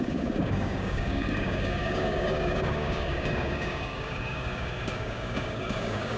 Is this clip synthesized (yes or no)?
yes